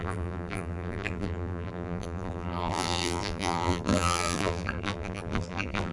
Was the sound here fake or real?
fake